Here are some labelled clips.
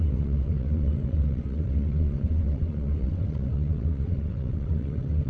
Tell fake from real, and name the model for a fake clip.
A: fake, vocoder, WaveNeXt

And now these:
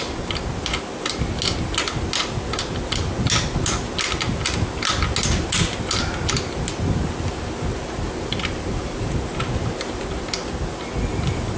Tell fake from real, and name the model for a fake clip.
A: real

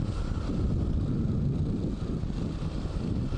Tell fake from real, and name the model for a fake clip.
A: real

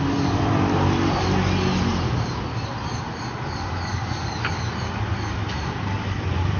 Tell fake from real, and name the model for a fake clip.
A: real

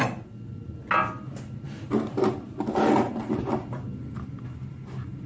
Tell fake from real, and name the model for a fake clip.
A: real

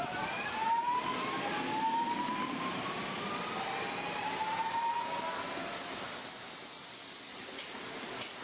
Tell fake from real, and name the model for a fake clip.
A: real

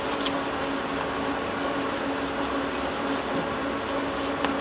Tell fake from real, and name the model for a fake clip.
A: real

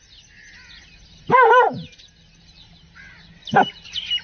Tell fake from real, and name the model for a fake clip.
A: real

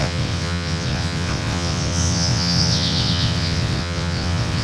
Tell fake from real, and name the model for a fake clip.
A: fake, vocoder, WaveNeXt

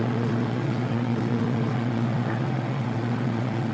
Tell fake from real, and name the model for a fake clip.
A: fake, vocoder, WaveNeXt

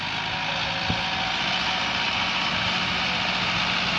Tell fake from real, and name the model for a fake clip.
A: real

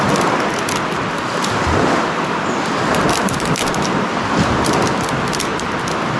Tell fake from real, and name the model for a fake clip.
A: real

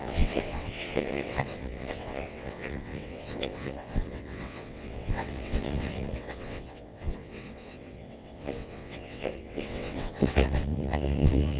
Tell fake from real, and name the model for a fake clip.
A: fake, vocoder, WaveNeXt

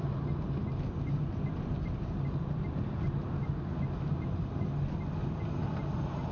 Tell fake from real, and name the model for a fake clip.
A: real